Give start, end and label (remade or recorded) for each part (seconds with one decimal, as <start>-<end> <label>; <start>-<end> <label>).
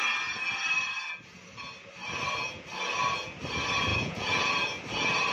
0.0-3.9 recorded; 3.9-4.5 remade; 4.5-5.3 recorded